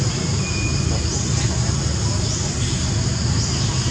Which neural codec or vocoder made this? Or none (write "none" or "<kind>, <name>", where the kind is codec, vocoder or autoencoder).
none